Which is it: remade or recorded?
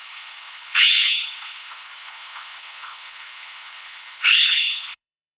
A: remade